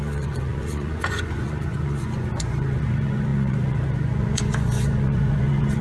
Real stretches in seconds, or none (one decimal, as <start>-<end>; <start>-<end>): none